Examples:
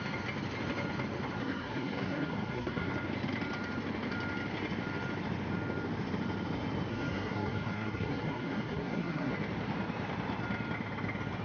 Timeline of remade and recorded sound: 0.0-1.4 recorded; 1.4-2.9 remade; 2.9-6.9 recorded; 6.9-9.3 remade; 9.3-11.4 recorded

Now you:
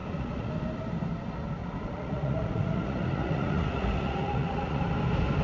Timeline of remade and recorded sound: 0.0-0.5 remade; 0.5-1.6 recorded; 1.6-4.8 remade; 4.8-5.4 recorded

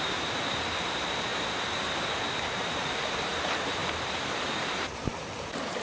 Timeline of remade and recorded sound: 0.0-1.3 remade; 1.3-2.4 recorded; 2.4-3.8 remade; 3.8-4.6 recorded; 4.6-5.8 remade

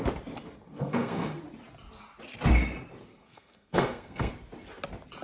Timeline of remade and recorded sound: 0.0-0.8 recorded; 0.8-1.4 remade; 1.4-3.1 recorded; 3.1-4.3 remade; 4.3-5.2 recorded

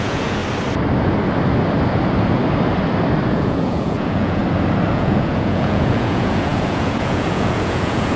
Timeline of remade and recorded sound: 0.0-0.4 remade; 0.4-3.3 recorded; 3.3-4.4 remade; 4.4-4.9 recorded; 4.9-8.2 remade

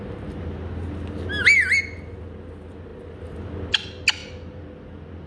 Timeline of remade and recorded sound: 0.0-5.3 recorded

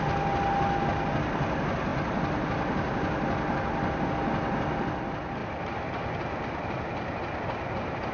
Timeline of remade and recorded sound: 0.0-8.1 recorded

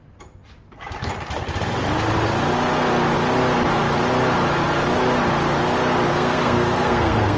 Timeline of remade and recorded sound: 0.0-6.1 recorded; 6.1-7.4 remade